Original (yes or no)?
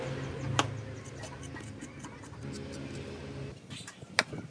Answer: yes